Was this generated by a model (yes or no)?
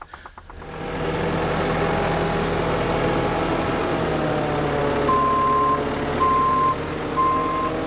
no